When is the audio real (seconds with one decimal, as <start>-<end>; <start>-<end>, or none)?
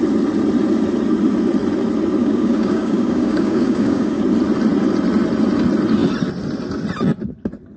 0.0-2.2; 4.2-7.8